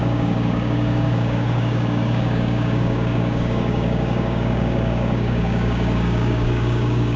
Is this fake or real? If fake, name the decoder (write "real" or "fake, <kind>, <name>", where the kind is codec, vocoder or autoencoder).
fake, codec, DAC